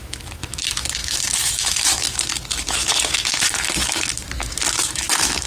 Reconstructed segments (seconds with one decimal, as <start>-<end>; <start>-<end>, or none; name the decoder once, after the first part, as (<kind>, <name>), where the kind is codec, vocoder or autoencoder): 0.0-5.5 (autoencoder, DAC-VAE)

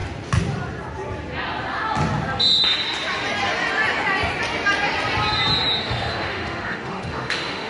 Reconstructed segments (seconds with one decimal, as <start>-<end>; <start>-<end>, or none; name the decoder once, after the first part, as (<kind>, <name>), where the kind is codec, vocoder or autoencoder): 5.8-7.7 (autoencoder, DAC-VAE)

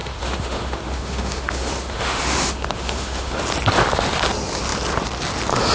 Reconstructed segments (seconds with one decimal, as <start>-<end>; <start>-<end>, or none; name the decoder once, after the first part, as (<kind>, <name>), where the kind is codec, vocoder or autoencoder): 0.0-3.4 (autoencoder, DAC-VAE)

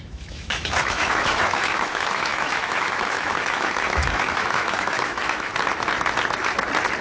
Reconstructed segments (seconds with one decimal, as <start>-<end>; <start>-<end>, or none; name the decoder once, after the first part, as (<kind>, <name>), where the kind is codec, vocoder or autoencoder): 0.0-5.5 (autoencoder, DAC-VAE)

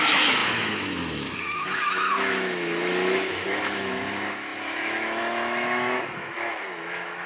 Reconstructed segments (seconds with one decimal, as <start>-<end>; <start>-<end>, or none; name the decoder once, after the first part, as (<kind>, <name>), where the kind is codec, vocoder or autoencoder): 0.0-7.3 (autoencoder, DAC-VAE)